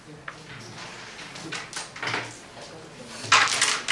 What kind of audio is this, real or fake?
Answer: real